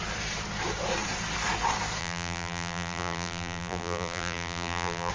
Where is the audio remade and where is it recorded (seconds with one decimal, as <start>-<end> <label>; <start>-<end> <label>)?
0.0-2.0 recorded; 2.0-5.1 remade